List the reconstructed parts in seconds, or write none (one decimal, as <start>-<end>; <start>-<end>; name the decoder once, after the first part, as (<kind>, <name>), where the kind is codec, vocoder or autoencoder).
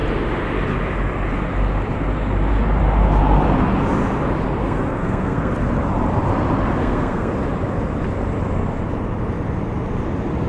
4.6-5.5 (codec, SNAC); 6.8-7.3